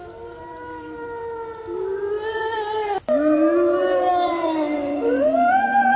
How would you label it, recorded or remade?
recorded